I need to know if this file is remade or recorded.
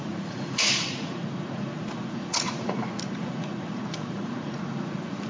remade